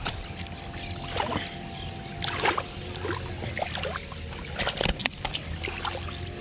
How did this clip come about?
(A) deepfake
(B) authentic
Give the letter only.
B